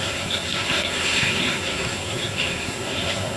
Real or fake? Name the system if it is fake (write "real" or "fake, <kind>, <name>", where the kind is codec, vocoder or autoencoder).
fake, codec, SNAC